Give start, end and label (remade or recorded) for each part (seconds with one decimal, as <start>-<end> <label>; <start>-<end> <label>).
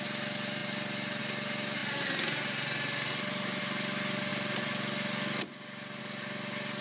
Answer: 0.0-6.8 recorded